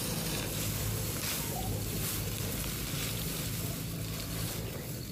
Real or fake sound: real